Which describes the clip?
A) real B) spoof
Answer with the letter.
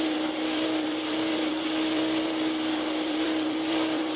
B